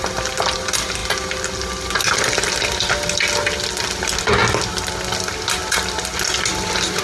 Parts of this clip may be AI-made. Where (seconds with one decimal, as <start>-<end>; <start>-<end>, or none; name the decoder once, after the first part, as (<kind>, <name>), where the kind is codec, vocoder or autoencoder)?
none